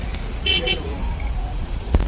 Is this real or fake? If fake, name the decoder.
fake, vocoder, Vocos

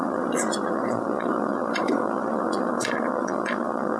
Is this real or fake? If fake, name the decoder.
fake, vocoder, Vocos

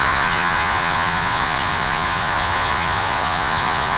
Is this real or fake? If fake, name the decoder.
fake, vocoder, Vocos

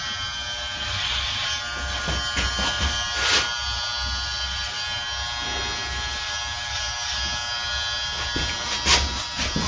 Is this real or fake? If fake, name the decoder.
real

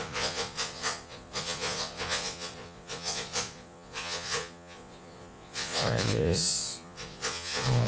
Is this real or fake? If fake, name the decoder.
fake, vocoder, Vocos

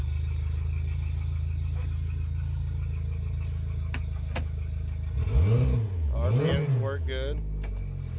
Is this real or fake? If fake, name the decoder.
real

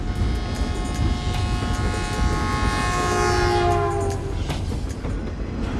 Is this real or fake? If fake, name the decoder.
real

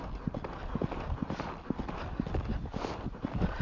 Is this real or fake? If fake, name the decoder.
real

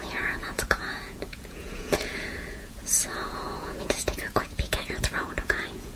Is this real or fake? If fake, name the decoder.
fake, vocoder, Vocos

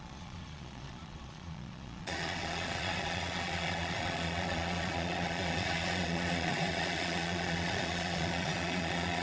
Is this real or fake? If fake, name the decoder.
fake, vocoder, Vocos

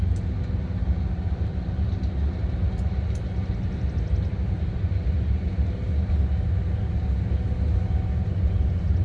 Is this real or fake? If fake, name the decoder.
real